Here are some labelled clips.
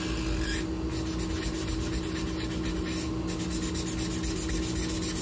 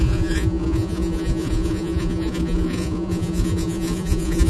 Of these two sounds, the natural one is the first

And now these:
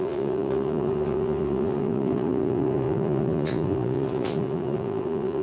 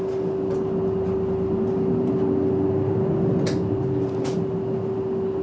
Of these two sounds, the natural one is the second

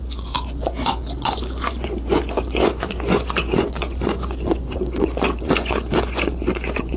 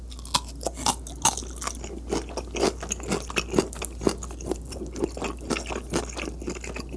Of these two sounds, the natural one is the second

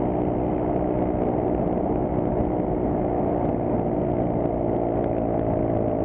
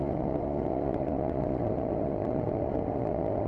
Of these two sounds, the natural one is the first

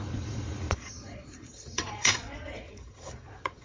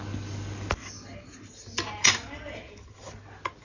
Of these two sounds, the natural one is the second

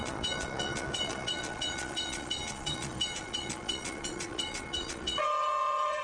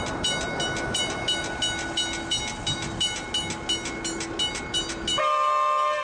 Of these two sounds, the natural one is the second